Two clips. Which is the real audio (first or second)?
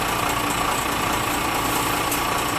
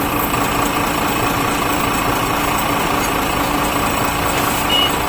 first